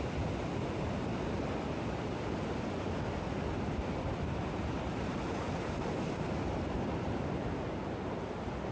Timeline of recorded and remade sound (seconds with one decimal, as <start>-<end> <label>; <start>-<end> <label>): 0.0-1.1 remade; 1.1-1.8 recorded; 1.8-8.7 remade